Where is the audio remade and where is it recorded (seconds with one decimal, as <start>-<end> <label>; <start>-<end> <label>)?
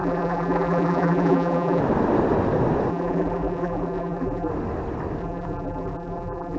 0.0-1.8 remade; 1.8-2.9 recorded; 2.9-4.5 remade; 4.5-5.2 recorded; 5.2-6.6 remade